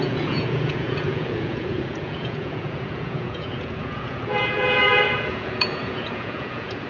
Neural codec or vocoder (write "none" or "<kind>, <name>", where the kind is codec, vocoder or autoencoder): vocoder, Vocos